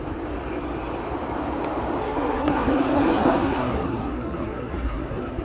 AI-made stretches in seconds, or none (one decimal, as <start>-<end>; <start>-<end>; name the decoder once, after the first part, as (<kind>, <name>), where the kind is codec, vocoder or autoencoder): 2.0-5.4 (codec, SNAC)